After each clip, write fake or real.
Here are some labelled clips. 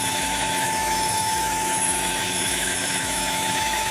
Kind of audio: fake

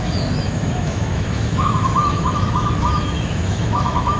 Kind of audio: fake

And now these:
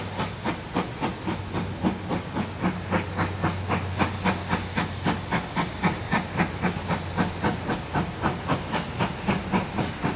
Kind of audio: real